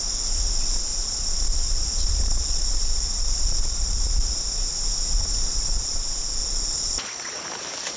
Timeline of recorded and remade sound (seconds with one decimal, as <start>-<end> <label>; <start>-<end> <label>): 0.0-0.9 recorded; 0.9-4.0 remade; 4.0-5.5 recorded; 5.5-6.0 remade; 6.0-6.4 recorded; 6.4-7.4 remade; 7.4-8.0 recorded